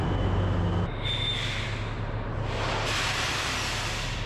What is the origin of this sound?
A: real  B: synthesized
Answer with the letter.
A